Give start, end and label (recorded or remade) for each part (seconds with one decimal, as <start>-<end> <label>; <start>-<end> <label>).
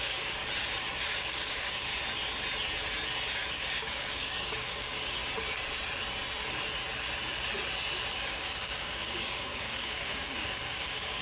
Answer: 0.0-0.4 remade; 0.4-1.1 recorded; 1.1-1.9 remade; 1.9-3.5 recorded; 3.5-5.2 remade; 5.2-8.1 recorded; 8.1-11.2 remade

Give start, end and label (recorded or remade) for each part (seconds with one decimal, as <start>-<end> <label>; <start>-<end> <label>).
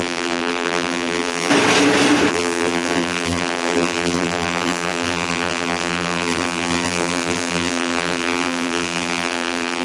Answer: 0.0-1.5 remade; 1.5-2.3 recorded; 2.3-9.8 remade